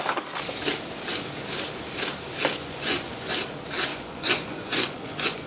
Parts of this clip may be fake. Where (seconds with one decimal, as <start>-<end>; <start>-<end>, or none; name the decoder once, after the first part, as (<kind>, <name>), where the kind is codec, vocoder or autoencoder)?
2.6-3.3 (vocoder, Vocos); 3.9-5.5